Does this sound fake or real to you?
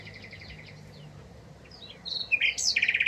real